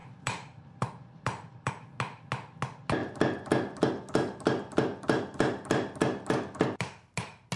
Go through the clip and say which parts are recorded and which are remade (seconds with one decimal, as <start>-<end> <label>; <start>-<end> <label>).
0.0-1.7 remade; 1.7-7.6 recorded